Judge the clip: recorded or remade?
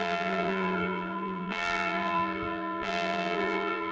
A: remade